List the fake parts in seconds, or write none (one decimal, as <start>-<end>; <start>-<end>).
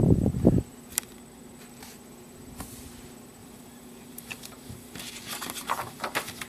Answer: 0.9-1.6; 3.4-6.5